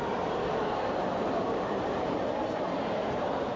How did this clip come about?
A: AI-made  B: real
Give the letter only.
A